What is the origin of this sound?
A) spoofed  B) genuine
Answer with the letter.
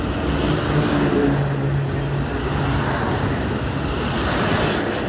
B